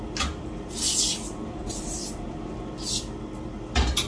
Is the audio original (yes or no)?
yes